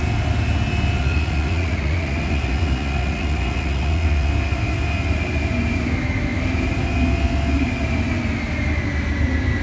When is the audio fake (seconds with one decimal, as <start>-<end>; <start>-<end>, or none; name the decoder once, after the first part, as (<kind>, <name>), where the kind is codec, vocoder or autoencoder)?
1.0-4.3 (vocoder, Vocos)